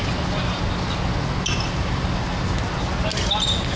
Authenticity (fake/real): real